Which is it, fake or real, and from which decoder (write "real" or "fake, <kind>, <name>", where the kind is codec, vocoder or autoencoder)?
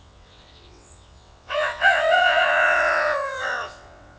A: fake, vocoder, WaveNeXt